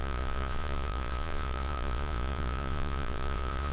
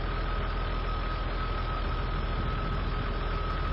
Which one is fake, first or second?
first